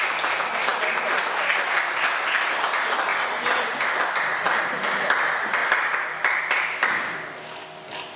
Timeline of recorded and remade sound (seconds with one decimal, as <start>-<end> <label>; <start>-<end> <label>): 0.0-5.6 recorded; 5.6-6.4 remade; 6.4-8.2 recorded